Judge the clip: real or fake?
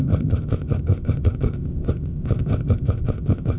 fake